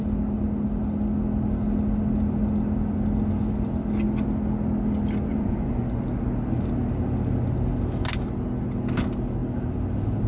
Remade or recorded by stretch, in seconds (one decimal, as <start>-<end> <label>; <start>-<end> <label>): 0.0-5.3 recorded; 5.3-6.0 remade; 6.0-10.3 recorded